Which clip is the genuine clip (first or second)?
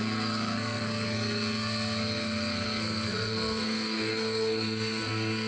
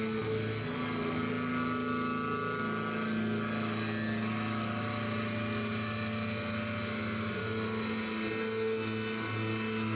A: second